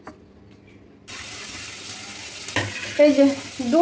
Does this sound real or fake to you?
real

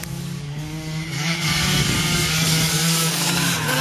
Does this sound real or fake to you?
fake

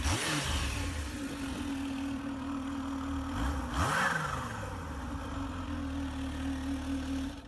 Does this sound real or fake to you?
real